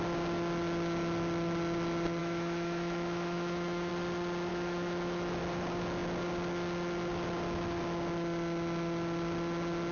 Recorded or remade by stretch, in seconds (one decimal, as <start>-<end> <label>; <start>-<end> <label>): 0.0-2.2 recorded; 2.2-3.9 remade; 3.9-4.5 recorded; 4.5-5.4 remade; 5.4-9.9 recorded